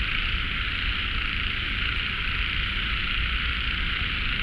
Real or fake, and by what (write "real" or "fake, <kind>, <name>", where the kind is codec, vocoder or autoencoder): real